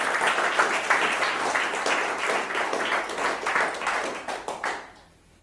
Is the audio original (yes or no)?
yes